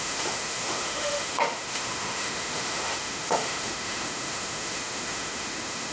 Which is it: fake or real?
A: fake